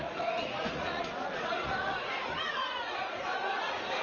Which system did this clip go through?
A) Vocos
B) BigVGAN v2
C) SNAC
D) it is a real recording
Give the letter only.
A